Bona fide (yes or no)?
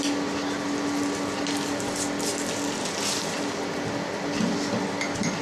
yes